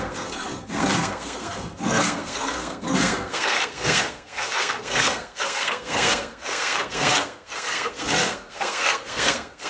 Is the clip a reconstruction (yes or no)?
yes